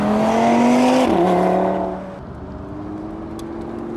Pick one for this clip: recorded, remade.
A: recorded